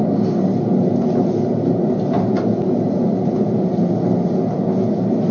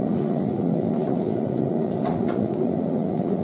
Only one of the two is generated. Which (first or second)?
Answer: second